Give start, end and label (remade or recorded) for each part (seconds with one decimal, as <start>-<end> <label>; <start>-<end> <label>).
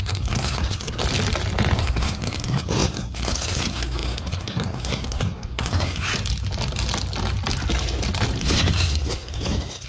0.0-1.0 remade; 1.0-1.8 recorded; 1.8-6.1 remade; 6.1-8.4 recorded; 8.4-9.9 remade